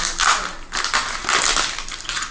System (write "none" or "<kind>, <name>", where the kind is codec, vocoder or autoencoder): none